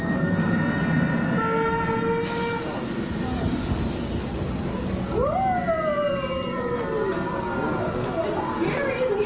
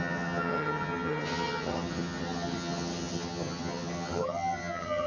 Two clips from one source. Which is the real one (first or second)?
first